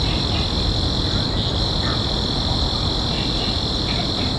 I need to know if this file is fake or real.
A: real